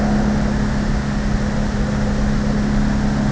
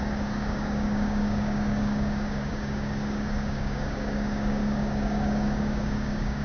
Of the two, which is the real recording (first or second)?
first